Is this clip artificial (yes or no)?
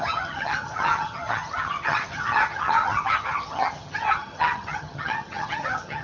yes